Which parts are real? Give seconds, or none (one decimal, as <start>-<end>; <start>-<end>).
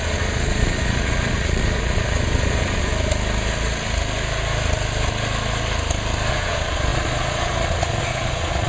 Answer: 2.9-6.3